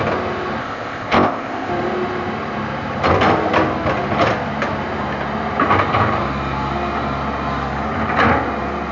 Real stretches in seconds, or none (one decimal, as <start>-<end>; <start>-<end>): 0.0-0.6; 1.7-8.9